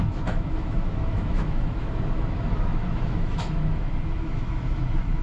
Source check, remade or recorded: remade